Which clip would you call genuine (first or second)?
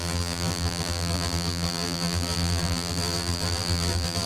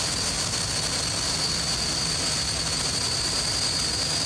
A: second